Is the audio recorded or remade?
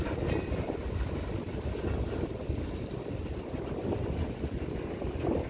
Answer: recorded